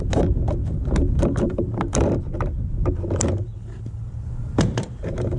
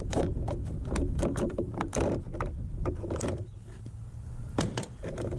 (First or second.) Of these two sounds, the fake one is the second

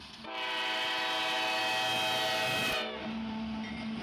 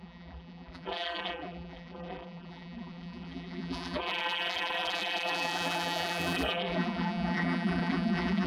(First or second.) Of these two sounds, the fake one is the second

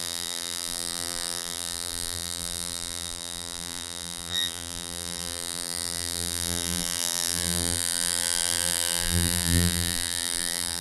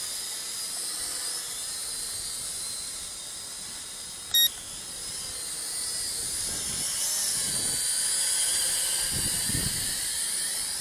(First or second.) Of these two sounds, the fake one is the first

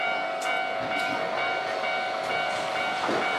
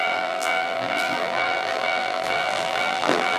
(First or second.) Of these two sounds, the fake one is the second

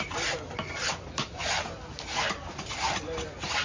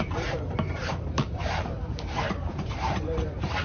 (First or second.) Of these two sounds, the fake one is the second